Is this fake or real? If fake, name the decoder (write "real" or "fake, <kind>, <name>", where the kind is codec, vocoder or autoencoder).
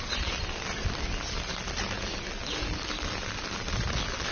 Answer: real